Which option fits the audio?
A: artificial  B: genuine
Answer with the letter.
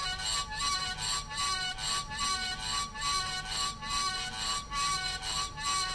B